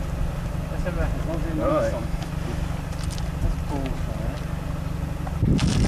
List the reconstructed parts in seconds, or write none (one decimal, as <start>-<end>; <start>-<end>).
1.7-2.3